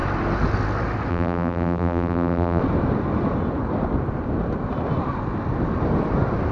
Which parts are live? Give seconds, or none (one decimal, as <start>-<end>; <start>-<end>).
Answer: 0.0-1.1; 2.6-6.5